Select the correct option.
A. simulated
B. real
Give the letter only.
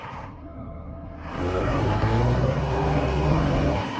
A